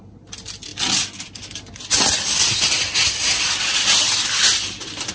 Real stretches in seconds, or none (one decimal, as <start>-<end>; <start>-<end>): 0.0-5.1